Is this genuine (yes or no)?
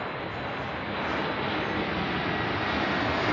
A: yes